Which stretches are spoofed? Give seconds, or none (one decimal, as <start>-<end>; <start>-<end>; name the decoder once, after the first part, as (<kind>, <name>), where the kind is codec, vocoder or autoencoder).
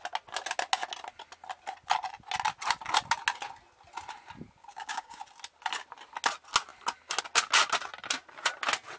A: 4.6-5.2 (codec, DAC)